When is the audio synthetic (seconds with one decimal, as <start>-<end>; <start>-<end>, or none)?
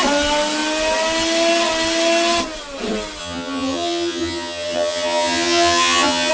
3.2-6.3